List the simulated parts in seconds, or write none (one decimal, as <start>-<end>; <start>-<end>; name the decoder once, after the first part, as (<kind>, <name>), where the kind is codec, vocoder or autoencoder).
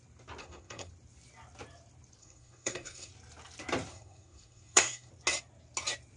0.4-0.9 (codec, SNAC); 2.2-3.1; 3.9-5.1